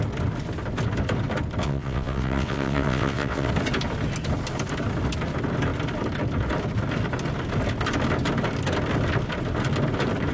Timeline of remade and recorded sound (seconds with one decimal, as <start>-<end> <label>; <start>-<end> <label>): 0.0-1.6 recorded; 1.6-3.5 remade; 3.5-10.3 recorded